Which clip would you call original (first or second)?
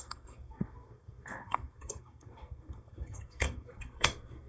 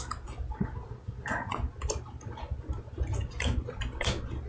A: second